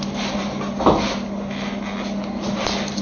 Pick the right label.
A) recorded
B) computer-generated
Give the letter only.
A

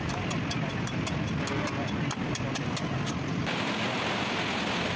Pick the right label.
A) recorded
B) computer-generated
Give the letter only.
A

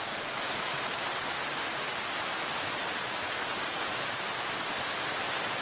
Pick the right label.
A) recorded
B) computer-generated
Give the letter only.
A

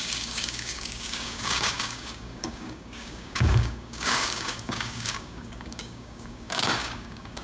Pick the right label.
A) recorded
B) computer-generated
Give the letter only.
B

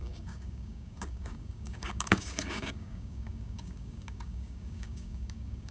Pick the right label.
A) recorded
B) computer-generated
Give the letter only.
B